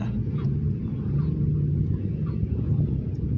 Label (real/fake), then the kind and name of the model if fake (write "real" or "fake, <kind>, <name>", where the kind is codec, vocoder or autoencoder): fake, vocoder, Vocos